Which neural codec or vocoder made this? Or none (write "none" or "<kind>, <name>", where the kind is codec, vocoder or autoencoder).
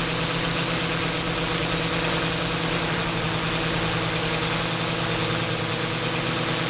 none